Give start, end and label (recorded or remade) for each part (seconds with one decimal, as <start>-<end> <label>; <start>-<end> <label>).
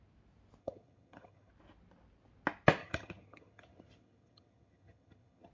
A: 0.0-0.6 recorded; 0.6-1.5 remade; 1.5-2.8 recorded; 2.8-5.5 remade